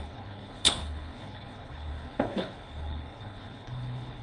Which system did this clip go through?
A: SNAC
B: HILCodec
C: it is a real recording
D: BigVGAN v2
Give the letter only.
B